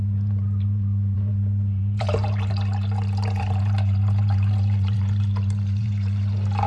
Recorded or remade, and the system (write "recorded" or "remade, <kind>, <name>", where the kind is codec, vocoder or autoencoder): remade, vocoder, BigVGAN v2